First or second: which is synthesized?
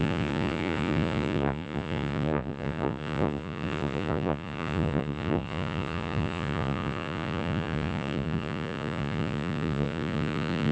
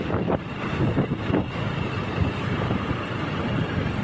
first